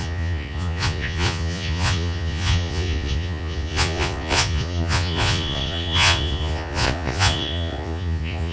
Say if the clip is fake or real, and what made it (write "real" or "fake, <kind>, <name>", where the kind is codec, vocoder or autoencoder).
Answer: fake, vocoder, Vocos